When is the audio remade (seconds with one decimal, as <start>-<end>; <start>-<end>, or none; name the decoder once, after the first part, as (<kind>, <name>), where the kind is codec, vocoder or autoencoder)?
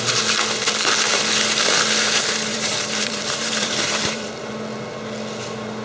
2.5-4.5 (vocoder, BigVGAN v2)